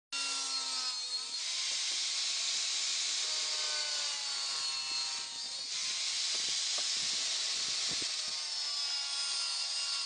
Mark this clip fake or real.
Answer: real